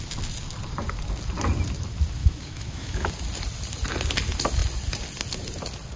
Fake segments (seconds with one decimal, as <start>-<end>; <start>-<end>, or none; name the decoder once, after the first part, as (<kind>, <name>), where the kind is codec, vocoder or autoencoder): 2.2-3.1 (autoencoder, DAC-VAE)